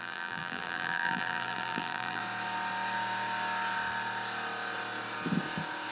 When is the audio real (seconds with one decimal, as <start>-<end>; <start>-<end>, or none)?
2.2-5.9